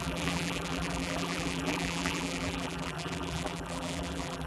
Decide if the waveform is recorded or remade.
remade